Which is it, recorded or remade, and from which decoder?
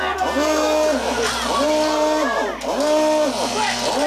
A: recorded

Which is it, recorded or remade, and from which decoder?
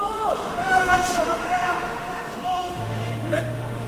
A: remade, autoencoder, DAC-VAE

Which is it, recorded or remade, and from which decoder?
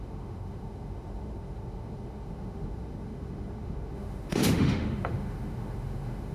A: remade, autoencoder, DAC-VAE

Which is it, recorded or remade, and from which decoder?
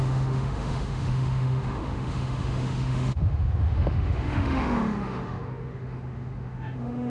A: remade, autoencoder, DAC-VAE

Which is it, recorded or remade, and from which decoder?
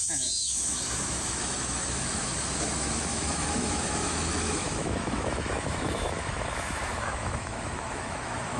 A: remade, autoencoder, DAC-VAE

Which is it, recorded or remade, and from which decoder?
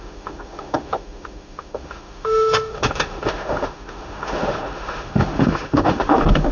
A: remade, autoencoder, DAC-VAE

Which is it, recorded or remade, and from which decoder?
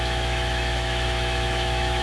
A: remade, autoencoder, DAC-VAE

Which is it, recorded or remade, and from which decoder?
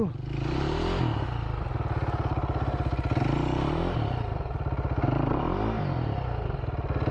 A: recorded